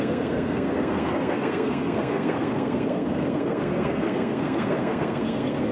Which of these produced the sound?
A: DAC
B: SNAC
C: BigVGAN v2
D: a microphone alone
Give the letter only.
B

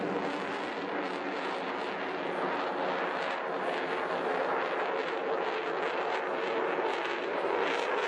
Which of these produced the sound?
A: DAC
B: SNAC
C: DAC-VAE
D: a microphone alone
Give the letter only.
D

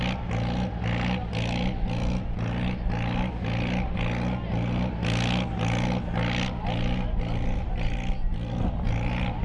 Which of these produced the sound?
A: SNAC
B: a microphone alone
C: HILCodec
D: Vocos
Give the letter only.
B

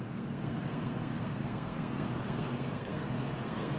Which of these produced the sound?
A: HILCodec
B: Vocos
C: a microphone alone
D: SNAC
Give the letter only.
D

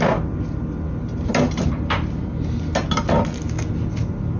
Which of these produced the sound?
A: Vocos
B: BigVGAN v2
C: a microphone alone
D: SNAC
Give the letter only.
C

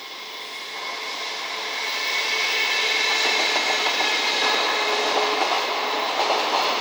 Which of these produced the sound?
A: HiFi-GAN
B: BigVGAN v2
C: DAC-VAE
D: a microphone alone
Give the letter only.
D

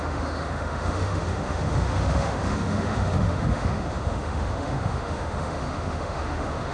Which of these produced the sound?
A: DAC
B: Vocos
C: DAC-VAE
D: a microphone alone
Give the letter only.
C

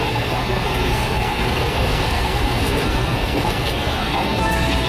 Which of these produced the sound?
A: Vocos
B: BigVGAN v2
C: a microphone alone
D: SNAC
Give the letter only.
D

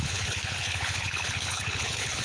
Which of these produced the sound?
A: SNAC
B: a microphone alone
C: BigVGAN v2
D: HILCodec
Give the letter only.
D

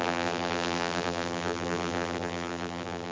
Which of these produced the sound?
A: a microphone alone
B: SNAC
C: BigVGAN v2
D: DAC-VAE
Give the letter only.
C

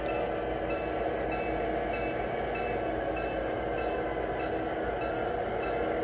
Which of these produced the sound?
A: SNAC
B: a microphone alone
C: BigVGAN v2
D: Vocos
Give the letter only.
B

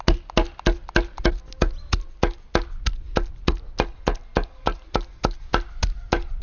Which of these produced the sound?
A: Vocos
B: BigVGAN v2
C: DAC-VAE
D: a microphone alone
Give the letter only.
D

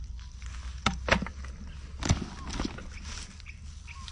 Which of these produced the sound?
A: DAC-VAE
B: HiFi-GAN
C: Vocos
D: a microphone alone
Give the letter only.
D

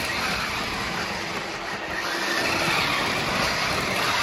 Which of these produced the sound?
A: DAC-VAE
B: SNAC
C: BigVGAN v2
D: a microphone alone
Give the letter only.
D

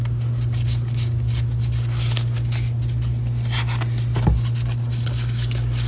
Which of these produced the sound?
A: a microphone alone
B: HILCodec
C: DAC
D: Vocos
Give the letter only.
A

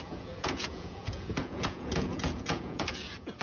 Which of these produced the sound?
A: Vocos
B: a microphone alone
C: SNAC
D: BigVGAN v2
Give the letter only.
A